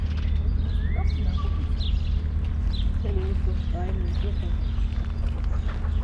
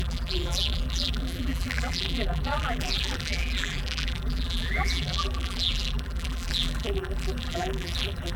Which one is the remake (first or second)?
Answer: second